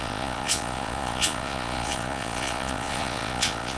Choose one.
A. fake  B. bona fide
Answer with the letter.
A